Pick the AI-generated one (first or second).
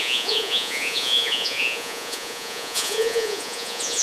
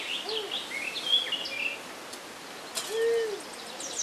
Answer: first